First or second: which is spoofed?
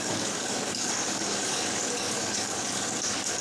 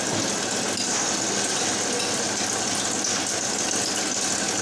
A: first